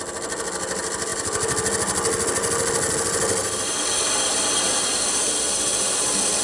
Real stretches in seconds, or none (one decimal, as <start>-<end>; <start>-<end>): 0.0-6.4